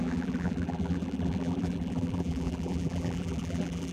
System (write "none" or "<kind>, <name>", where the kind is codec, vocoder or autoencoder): vocoder, BigVGAN v2